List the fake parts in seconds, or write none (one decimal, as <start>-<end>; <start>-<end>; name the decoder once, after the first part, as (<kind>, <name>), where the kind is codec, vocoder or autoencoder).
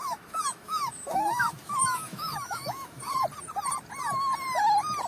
0.0-3.1 (autoencoder, DAC-VAE)